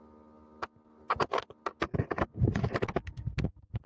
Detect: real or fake real